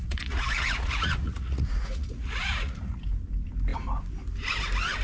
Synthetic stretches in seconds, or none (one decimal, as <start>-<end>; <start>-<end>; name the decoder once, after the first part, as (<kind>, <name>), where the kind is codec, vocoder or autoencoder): 0.0-3.0 (vocoder, Vocos)